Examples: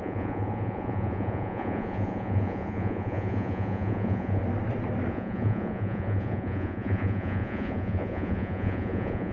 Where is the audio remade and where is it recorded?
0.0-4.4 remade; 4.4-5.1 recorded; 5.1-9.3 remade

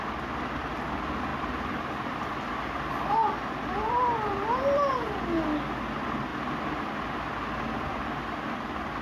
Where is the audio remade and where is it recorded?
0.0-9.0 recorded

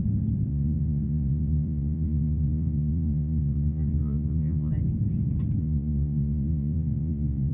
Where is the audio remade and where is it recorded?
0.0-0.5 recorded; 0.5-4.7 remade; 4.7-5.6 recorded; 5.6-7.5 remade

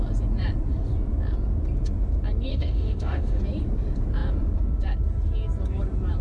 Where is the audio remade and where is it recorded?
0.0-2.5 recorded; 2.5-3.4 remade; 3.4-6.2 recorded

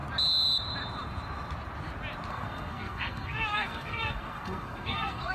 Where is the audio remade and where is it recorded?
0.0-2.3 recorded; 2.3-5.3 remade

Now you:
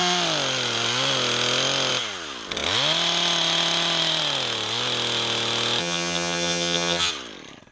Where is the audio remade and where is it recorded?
0.0-5.8 recorded; 5.8-7.1 remade; 7.1-7.7 recorded

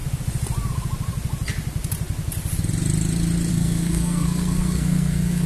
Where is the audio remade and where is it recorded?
0.0-3.5 recorded; 3.5-5.5 remade

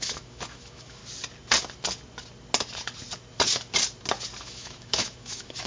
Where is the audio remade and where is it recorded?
0.0-1.0 remade; 1.0-4.4 recorded; 4.4-5.7 remade